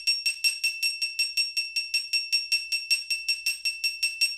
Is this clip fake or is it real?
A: real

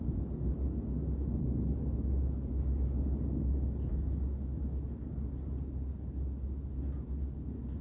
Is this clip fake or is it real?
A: real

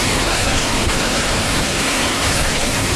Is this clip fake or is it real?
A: fake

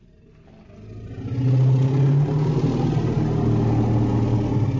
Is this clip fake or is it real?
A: real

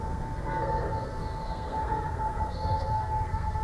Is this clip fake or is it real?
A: fake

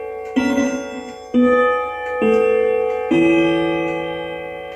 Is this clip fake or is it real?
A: real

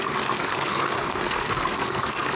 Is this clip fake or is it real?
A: fake